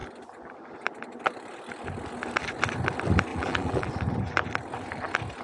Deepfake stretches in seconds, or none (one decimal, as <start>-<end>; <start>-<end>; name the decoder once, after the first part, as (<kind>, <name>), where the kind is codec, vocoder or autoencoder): 3.3-3.9 (vocoder, BigVGAN v2)